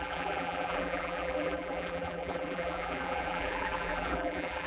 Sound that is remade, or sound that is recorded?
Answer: remade